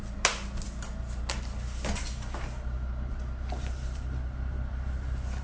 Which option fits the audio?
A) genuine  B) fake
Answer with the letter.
A